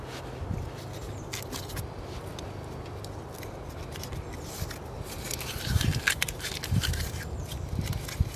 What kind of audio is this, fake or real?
real